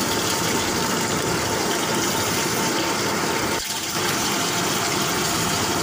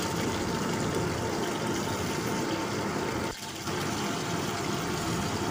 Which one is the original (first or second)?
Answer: second